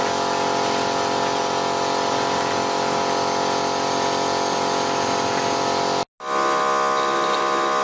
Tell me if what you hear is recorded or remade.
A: recorded